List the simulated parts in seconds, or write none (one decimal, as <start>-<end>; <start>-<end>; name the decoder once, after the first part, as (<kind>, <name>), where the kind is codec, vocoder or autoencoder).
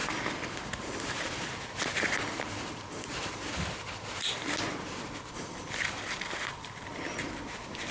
0.7-7.9 (vocoder, BigVGAN v2)